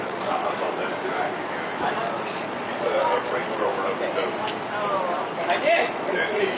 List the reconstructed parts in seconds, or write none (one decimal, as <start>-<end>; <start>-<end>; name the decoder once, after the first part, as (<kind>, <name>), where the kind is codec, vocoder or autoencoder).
0.0-0.6 (vocoder, Vocos); 1.9-3.7; 5.6-6.6